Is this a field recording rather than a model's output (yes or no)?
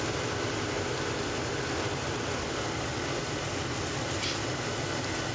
yes